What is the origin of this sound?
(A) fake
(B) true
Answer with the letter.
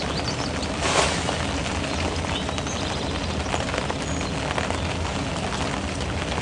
B